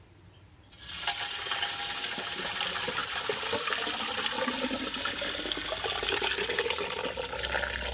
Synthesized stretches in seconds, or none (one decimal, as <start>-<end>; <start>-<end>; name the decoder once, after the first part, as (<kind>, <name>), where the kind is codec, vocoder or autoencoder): none